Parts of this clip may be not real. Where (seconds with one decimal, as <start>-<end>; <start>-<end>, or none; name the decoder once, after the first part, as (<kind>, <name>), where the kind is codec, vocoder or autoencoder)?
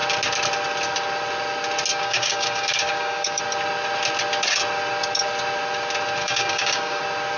1.9-3.4 (codec, DAC); 6.2-7.0